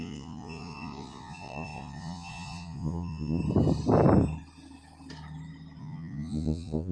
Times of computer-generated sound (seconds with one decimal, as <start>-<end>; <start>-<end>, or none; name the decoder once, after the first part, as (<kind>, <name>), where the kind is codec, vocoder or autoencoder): 0.0-3.4 (vocoder, Vocos); 5.8-6.9